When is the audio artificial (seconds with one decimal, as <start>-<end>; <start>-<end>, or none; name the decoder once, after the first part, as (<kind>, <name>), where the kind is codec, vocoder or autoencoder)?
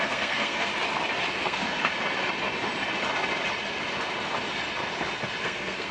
0.0-0.7 (codec, SNAC); 1.3-1.9; 5.4-5.9